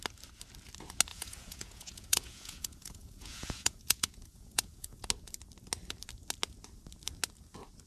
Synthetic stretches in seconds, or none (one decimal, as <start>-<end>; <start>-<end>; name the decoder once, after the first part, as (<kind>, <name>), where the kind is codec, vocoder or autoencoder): 1.1-5.1 (vocoder, Vocos)